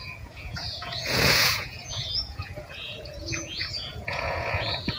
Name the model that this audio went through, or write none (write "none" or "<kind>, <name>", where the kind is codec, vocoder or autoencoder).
vocoder, Vocos